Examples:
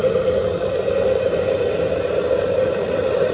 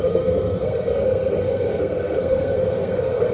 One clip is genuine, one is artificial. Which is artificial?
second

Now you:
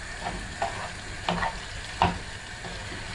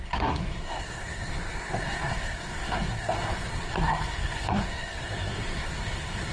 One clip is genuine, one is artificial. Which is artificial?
second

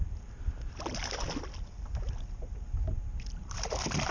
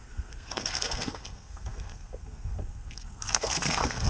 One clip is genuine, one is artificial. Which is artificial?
second